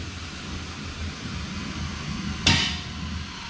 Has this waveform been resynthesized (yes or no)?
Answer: no